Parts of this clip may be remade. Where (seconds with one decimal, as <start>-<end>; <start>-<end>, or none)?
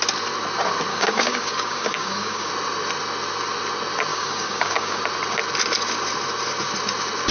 0.9-2.5; 4.1-5.0